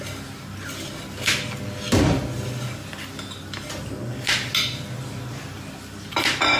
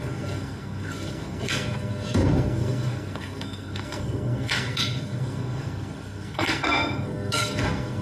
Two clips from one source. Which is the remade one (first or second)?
second